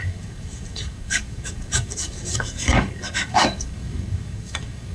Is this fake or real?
fake